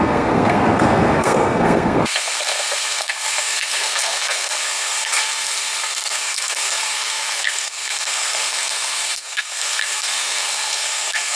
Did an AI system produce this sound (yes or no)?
yes